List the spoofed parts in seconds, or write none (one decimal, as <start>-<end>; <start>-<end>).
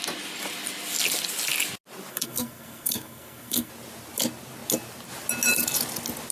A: 2.1-3.7